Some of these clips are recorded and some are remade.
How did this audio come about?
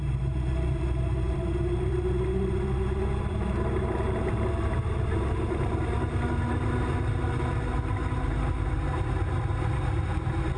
remade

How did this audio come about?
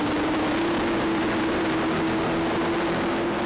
recorded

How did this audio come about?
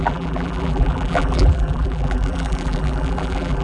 remade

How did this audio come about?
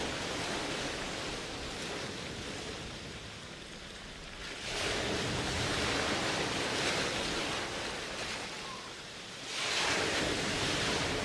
recorded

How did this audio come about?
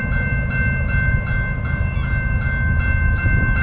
recorded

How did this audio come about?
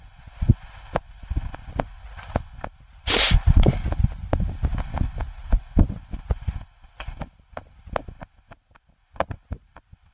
recorded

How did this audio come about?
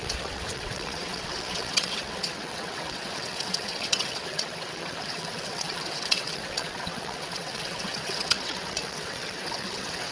remade